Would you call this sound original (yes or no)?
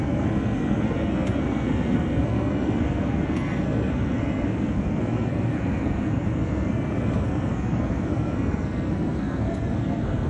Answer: no